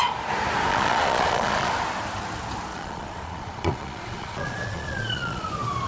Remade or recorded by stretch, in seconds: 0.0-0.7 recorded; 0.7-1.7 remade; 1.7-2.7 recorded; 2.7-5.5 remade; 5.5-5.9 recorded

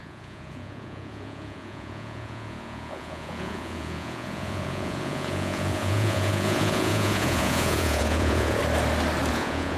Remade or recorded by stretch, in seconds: 0.0-8.6 remade; 8.6-9.3 recorded; 9.3-9.8 remade

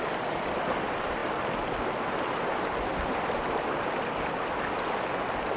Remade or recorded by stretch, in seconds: 0.0-5.6 recorded

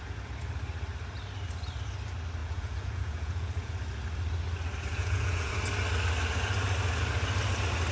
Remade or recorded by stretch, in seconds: 0.0-2.4 recorded; 2.4-3.7 remade; 3.7-4.9 recorded; 4.9-5.5 remade; 5.5-7.9 recorded

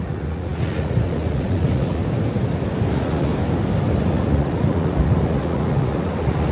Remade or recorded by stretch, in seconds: 0.0-2.0 remade; 2.0-2.9 recorded; 2.9-3.3 remade; 3.3-4.0 recorded; 4.0-6.5 remade

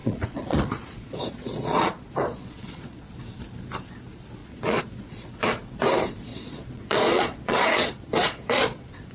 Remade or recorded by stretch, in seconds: 0.0-3.1 remade; 3.1-4.4 recorded; 4.4-5.3 remade; 5.3-6.3 recorded; 6.3-9.1 remade